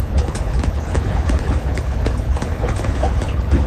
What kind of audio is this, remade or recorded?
remade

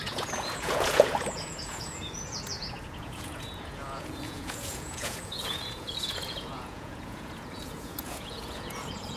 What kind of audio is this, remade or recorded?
remade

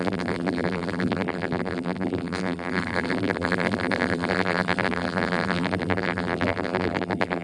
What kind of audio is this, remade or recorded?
remade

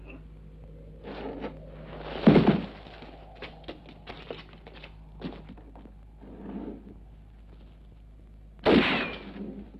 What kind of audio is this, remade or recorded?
recorded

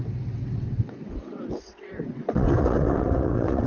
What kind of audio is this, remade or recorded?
remade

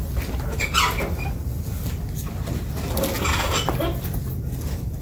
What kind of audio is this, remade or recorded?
recorded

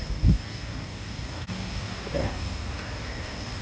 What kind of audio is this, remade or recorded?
remade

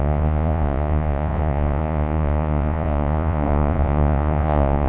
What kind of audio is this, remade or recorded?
remade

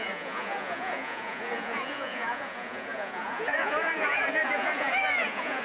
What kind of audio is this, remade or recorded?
remade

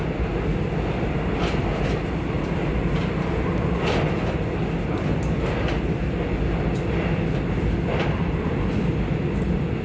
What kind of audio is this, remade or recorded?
recorded